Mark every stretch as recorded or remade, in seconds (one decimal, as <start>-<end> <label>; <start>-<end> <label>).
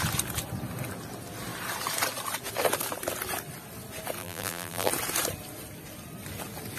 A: 0.0-4.2 recorded; 4.2-4.9 remade; 4.9-6.8 recorded